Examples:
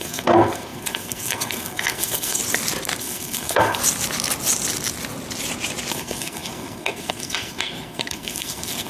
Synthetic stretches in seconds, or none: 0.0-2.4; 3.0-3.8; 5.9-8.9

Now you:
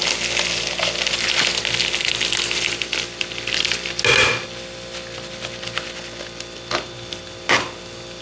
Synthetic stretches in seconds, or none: none

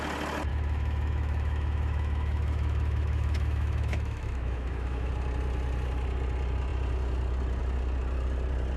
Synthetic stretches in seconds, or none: 0.5-5.1